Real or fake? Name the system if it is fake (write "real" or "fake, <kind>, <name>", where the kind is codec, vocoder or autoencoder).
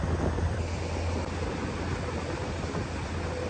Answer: real